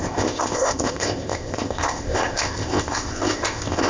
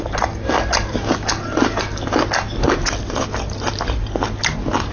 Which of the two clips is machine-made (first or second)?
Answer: first